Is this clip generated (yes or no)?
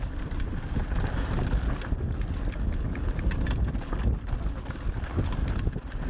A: no